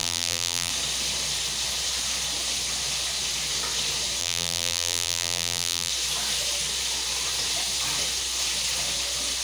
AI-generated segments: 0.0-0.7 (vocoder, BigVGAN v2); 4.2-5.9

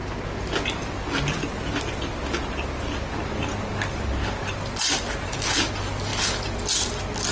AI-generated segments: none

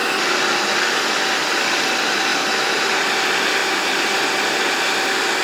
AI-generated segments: 2.3-3.0 (vocoder, BigVGAN v2); 3.6-4.2

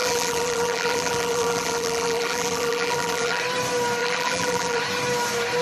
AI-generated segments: 0.0-3.4 (vocoder, BigVGAN v2); 4.0-4.8

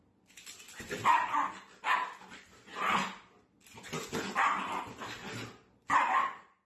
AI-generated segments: none

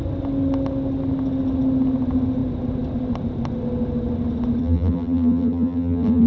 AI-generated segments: 4.6-6.3 (vocoder, BigVGAN v2)